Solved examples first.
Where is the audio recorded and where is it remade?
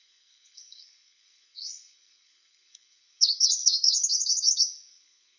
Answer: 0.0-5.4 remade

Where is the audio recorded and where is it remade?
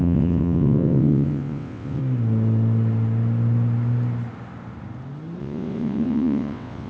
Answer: 0.0-2.0 remade; 2.0-5.4 recorded; 5.4-6.9 remade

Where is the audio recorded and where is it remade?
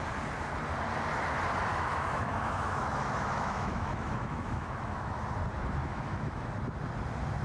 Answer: 0.0-1.7 recorded; 1.7-5.2 remade; 5.2-5.8 recorded; 5.8-6.5 remade; 6.5-7.4 recorded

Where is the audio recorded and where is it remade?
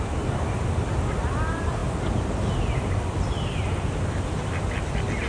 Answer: 0.0-5.3 recorded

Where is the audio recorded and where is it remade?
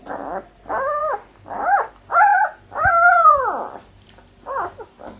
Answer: 0.0-1.0 recorded; 1.0-1.9 remade; 1.9-5.2 recorded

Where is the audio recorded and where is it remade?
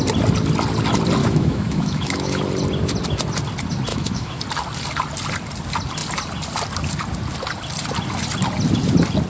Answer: 0.0-1.2 recorded; 1.2-2.4 remade; 2.4-3.9 recorded; 3.9-4.4 remade; 4.4-9.3 recorded